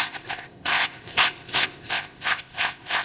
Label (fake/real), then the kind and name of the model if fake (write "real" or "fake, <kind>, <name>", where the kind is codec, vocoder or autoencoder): fake, codec, ZipCodec